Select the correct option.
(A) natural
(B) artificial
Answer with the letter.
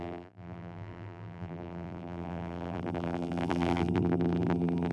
B